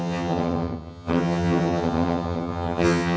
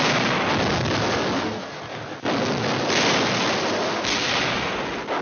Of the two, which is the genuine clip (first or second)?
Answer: second